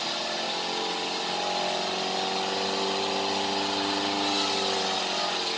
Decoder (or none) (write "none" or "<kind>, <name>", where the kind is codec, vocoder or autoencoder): none